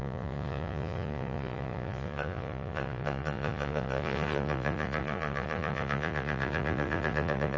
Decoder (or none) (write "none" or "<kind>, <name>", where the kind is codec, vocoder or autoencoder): vocoder, Vocos